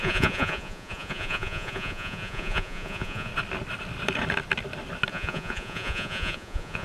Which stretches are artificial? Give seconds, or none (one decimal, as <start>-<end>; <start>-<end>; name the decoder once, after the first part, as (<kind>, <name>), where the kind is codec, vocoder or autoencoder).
0.0-3.3 (vocoder, Vocos); 5.1-6.8